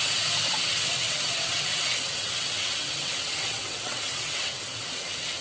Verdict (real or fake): fake